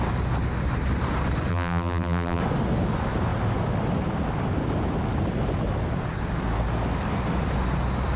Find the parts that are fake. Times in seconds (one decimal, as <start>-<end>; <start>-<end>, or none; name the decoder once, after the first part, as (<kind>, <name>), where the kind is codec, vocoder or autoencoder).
1.5-2.4 (vocoder, BigVGAN v2)